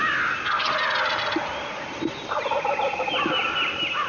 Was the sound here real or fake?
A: real